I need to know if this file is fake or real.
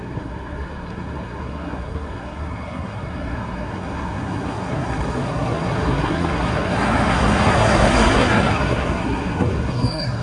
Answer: fake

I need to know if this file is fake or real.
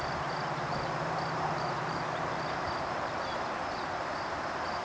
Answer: fake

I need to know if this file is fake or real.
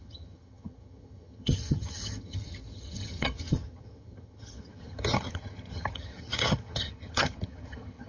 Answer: fake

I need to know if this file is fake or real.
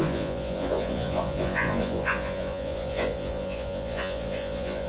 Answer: fake